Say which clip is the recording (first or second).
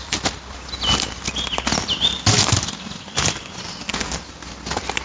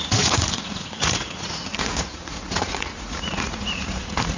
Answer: first